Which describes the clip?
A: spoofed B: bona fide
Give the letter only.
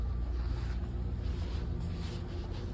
B